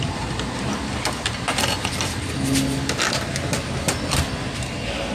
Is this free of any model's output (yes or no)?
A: yes